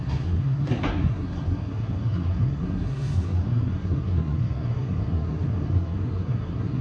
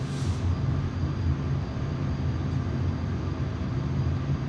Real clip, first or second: second